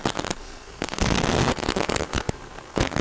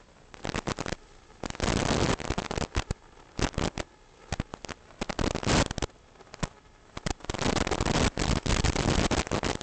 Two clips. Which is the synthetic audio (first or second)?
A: first